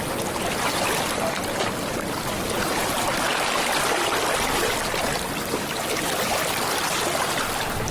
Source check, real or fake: real